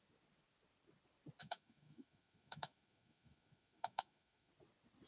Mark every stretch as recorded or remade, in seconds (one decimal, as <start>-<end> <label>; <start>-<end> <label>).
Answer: 0.0-1.4 recorded; 1.4-4.5 remade; 4.5-5.1 recorded